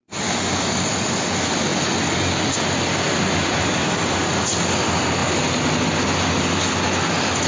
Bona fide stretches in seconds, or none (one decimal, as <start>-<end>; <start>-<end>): 0.0-7.5